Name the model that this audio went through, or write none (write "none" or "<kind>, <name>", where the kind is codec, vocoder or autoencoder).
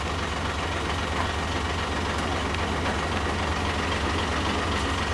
none